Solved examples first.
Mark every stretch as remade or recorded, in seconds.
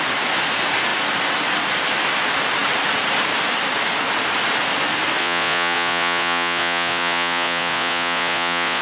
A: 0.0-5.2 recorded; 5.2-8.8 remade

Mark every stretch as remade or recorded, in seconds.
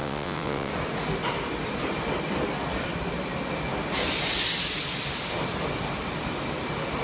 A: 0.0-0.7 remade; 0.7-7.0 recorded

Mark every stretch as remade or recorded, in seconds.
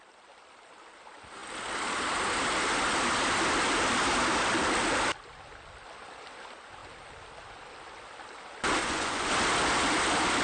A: 0.0-8.8 recorded; 8.8-9.3 remade; 9.3-10.4 recorded